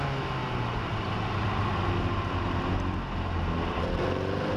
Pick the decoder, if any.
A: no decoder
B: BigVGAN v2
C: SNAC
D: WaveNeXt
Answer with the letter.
A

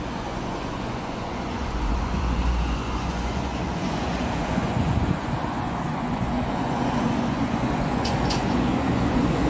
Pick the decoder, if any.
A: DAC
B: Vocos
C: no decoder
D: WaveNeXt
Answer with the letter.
B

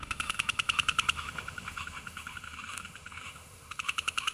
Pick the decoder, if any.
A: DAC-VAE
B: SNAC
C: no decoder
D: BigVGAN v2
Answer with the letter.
A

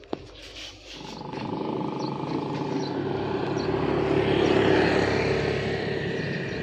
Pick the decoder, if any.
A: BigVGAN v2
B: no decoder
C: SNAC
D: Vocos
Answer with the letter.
B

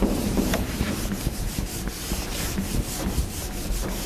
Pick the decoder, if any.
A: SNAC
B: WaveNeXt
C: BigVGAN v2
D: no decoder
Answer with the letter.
C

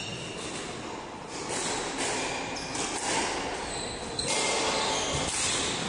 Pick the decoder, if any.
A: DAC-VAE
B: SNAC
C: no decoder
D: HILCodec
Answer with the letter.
C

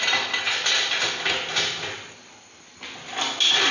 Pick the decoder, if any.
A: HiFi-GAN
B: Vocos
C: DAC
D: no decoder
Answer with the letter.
D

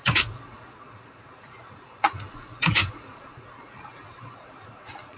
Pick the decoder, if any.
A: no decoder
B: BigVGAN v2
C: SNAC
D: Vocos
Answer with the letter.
D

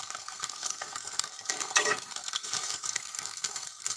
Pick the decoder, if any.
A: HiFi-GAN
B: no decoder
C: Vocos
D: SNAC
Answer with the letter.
D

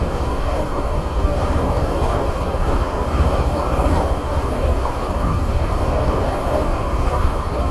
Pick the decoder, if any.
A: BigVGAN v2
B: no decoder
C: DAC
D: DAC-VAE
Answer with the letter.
C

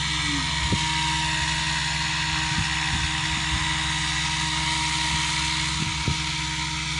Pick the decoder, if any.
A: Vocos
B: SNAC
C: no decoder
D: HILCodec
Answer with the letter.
C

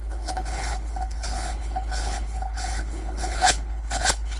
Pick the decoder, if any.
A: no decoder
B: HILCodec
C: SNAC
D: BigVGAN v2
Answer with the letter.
B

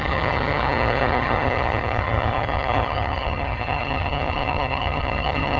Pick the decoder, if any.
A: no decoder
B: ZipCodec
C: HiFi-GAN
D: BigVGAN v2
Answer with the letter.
C